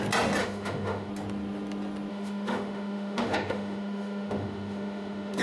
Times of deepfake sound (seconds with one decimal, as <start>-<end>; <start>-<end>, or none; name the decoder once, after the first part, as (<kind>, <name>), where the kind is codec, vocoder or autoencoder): 0.4-1.1 (autoencoder, DAC-VAE); 2.1-5.4